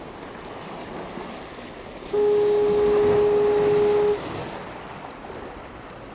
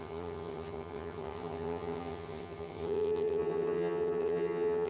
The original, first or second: first